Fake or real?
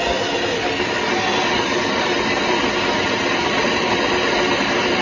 real